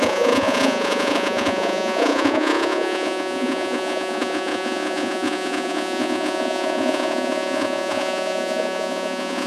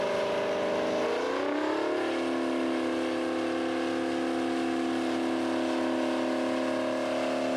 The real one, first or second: second